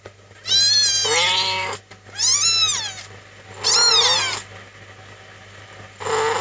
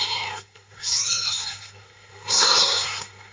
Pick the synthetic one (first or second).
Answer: second